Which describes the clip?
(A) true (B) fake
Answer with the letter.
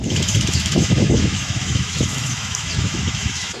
B